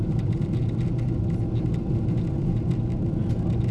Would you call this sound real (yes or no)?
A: yes